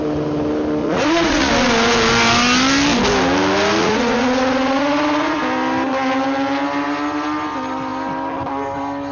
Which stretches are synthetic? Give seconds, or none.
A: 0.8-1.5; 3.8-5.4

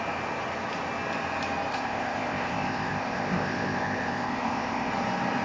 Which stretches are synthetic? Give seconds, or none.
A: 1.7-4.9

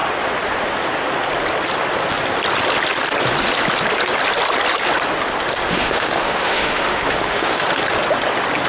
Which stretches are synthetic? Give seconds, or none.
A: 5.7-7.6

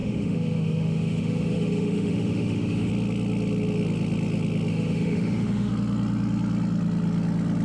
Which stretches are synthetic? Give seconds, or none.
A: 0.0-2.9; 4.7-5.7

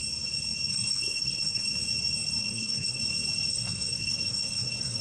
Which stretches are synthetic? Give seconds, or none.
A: 0.7-1.7; 2.4-3.0; 3.5-5.0